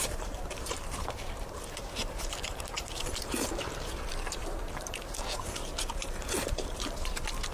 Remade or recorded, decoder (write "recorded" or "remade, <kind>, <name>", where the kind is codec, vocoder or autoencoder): remade, vocoder, BigVGAN v2